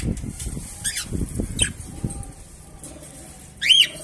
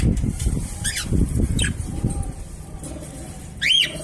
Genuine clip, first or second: first